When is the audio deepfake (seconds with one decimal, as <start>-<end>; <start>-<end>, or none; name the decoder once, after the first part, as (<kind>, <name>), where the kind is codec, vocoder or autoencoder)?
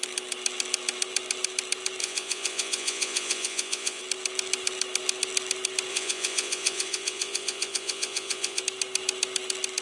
2.0-4.0 (vocoder, Vocos); 5.9-8.6